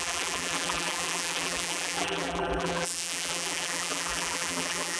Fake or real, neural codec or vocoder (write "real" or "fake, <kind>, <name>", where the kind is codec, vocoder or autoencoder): fake, vocoder, BigVGAN v2